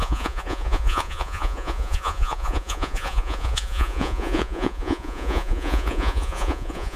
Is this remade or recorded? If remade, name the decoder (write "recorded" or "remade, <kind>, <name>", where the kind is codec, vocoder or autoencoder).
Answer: remade, vocoder, Vocos